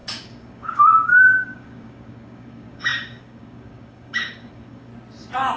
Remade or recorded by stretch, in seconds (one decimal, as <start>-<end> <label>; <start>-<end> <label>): 0.0-4.9 remade; 4.9-5.6 recorded